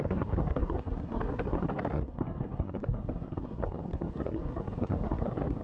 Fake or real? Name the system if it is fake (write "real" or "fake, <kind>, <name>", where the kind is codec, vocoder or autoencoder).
fake, codec, SNAC